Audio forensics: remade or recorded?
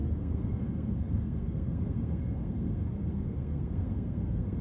remade